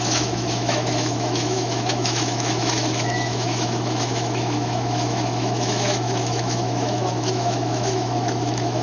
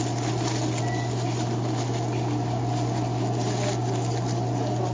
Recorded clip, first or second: second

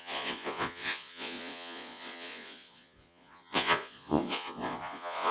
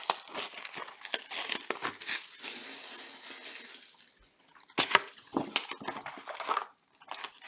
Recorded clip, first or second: second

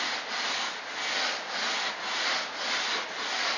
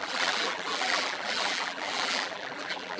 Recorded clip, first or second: first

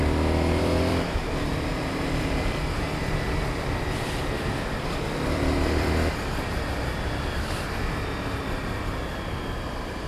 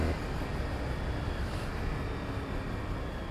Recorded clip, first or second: second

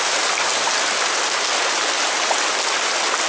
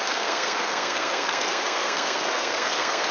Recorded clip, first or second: first